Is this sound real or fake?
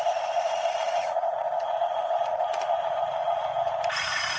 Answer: fake